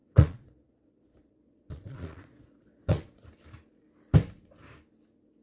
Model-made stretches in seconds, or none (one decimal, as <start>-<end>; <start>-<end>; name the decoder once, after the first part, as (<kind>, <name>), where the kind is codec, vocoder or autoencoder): 0.0-3.2 (vocoder, Vocos)